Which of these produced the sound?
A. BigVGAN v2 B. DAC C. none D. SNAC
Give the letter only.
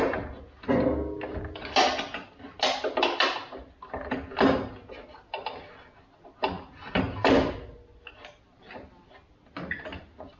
C